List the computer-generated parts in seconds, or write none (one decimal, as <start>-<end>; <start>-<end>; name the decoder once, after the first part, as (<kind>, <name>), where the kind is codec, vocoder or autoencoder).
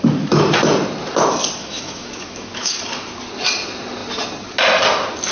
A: 1.6-2.8 (autoencoder, DAC-VAE)